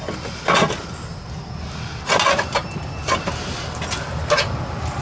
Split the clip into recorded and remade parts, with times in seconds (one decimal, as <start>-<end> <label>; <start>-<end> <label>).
0.0-5.0 recorded